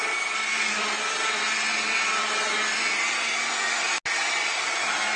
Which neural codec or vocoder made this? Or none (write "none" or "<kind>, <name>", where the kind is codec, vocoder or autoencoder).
none